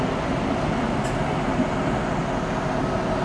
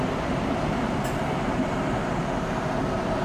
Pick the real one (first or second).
first